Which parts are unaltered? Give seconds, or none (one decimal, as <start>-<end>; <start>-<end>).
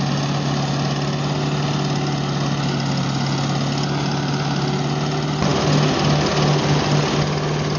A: 0.0-7.8